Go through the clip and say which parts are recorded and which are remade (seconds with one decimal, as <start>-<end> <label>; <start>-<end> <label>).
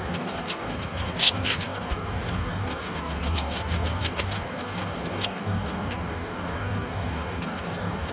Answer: 0.0-8.1 remade